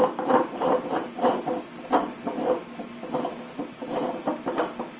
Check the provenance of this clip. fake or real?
real